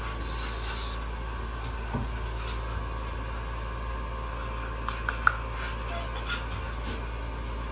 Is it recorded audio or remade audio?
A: recorded